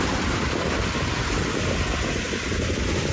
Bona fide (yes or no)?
no